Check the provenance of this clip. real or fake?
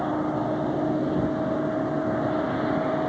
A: real